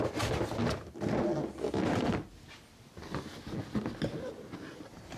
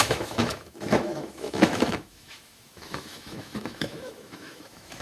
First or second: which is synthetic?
second